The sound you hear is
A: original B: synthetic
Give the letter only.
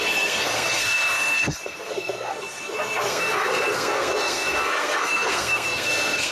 B